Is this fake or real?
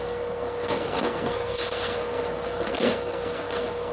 fake